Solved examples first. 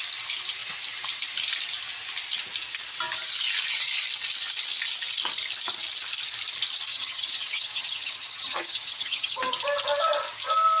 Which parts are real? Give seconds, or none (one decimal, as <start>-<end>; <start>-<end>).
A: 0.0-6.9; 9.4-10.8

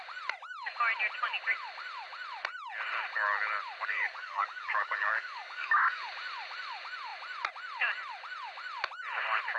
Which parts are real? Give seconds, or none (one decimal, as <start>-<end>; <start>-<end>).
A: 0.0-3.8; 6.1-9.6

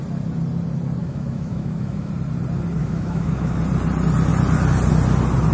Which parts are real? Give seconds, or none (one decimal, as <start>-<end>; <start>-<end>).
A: 0.0-1.0; 2.1-2.8; 3.6-5.5

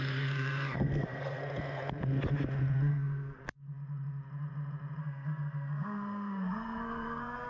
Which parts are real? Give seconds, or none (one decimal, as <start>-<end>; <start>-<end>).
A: 1.4-2.9; 3.4-5.0

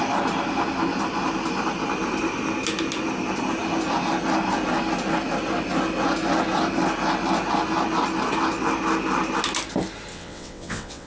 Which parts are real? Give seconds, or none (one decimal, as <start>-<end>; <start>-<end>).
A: 0.0-10.1

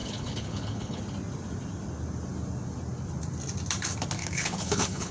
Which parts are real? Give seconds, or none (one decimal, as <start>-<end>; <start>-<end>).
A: 1.0-4.2

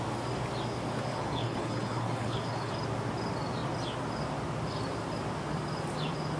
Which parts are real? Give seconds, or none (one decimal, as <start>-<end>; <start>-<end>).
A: 0.0-1.1; 2.7-6.4

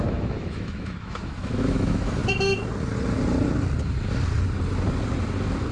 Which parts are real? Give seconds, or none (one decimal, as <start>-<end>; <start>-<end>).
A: 2.2-5.7